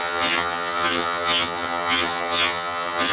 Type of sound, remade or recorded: remade